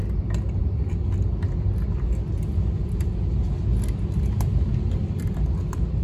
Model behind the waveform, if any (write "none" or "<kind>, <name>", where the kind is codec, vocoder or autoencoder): none